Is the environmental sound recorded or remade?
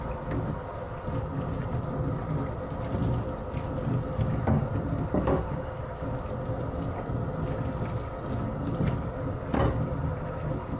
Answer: recorded